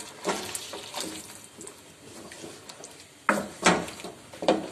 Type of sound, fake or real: real